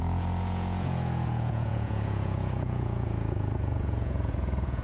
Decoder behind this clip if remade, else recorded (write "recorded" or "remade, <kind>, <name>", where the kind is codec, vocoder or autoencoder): remade, vocoder, Vocos